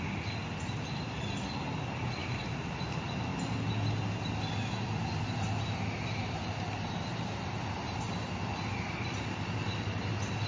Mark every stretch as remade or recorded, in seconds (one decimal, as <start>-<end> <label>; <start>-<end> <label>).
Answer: 0.0-2.2 recorded; 2.2-2.8 remade; 2.8-6.1 recorded; 6.1-7.6 remade; 7.6-10.5 recorded